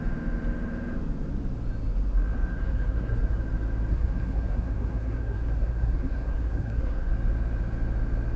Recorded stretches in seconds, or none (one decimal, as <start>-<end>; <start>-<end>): 0.0-2.5; 3.4-3.9; 7.1-8.4